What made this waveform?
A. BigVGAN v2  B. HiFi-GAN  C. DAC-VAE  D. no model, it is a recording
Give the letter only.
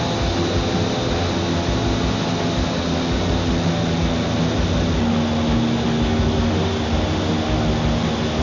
D